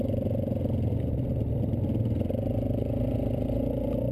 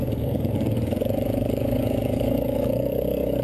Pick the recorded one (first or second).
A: first